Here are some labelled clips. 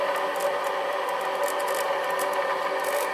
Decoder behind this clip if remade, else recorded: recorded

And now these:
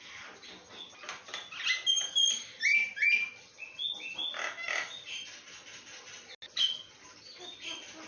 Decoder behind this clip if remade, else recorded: recorded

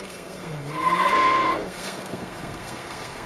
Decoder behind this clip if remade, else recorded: remade, codec, SNAC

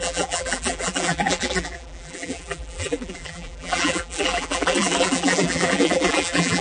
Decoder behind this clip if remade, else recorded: remade, vocoder, BigVGAN v2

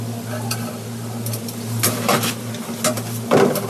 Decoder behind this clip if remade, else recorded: recorded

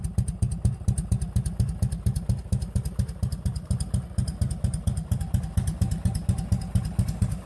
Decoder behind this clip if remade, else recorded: recorded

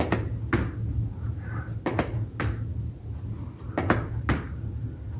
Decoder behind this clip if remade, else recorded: recorded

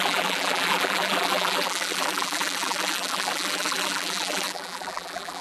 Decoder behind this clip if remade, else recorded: remade, vocoder, BigVGAN v2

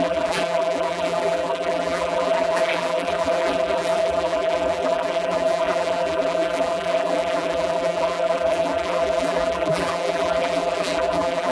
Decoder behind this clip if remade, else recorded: remade, vocoder, BigVGAN v2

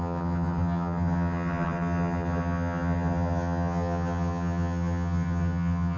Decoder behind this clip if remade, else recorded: remade, vocoder, HiFi-GAN